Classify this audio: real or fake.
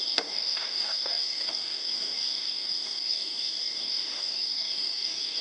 fake